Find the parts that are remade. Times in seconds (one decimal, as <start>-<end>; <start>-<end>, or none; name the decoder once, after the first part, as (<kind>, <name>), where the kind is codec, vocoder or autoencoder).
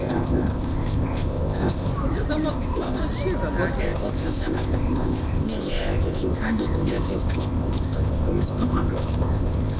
0.0-1.9 (codec, ZipCodec); 2.5-3.0; 3.8-9.8